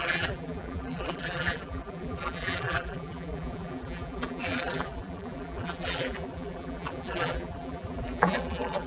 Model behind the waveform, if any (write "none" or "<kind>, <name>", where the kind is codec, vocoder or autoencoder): vocoder, BigVGAN v2